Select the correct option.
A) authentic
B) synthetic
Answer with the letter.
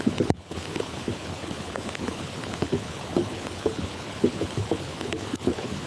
B